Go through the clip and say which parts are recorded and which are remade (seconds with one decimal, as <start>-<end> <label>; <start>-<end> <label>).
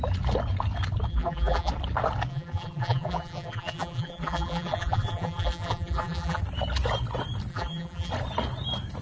0.0-1.1 recorded; 1.1-1.7 remade; 1.7-2.3 recorded; 2.3-6.4 remade; 6.4-7.5 recorded; 7.5-8.1 remade; 8.1-9.0 recorded